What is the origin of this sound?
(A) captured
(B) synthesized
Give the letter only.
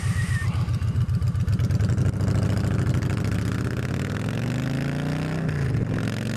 A